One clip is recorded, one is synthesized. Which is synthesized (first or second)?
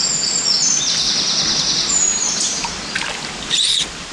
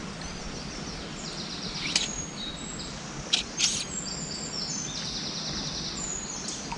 first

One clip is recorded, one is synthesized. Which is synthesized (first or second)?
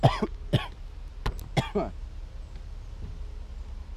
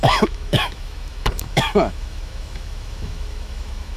second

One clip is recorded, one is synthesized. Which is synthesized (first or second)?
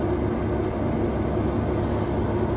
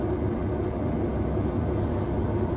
second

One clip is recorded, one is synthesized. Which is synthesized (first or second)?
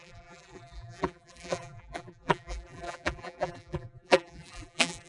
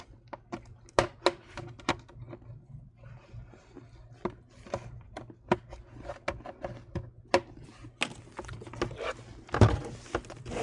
first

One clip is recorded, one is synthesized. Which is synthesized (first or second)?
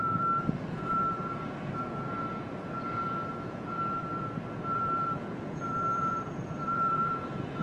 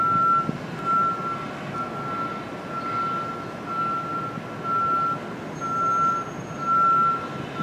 first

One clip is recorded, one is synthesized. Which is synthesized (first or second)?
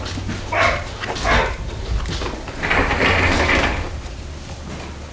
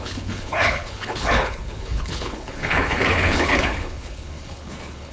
second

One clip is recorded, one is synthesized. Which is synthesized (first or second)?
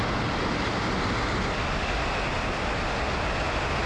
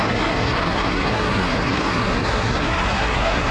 second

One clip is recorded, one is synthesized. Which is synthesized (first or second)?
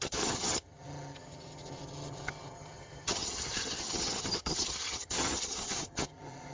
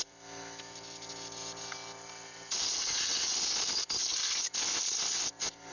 first